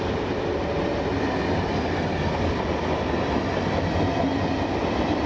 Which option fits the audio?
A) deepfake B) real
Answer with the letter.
B